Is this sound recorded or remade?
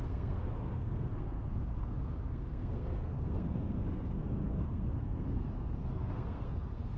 remade